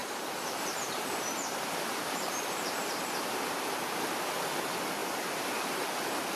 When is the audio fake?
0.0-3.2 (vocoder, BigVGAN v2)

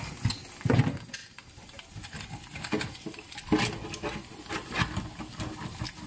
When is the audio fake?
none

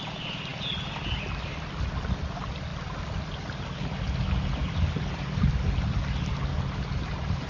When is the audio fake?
none